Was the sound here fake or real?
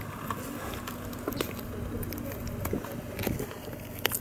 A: real